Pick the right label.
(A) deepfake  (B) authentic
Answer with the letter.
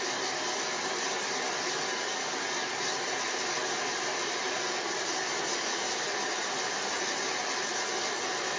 B